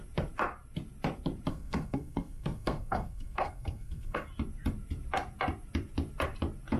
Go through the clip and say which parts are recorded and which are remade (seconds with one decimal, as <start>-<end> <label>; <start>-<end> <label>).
0.0-1.5 recorded; 1.5-4.3 remade; 4.3-6.8 recorded